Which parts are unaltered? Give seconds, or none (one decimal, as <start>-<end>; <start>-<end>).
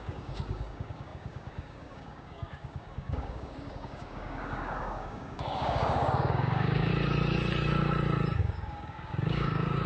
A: 6.9-8.4